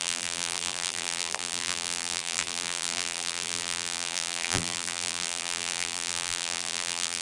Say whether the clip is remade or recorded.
remade